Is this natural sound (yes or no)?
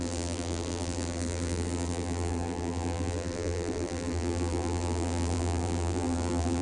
no